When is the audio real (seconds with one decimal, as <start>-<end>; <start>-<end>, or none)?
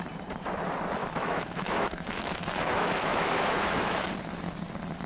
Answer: 0.0-1.0; 4.1-5.1